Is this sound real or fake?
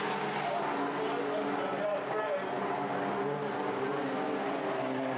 real